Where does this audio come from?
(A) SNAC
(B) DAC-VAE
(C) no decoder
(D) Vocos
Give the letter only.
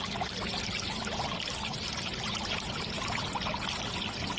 C